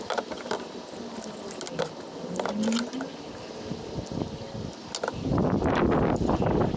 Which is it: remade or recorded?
recorded